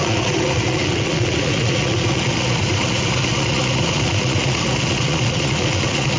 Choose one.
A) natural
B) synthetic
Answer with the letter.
B